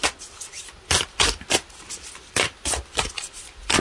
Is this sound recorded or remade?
recorded